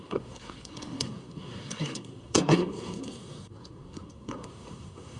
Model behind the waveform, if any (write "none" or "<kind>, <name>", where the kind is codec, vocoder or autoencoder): codec, SNAC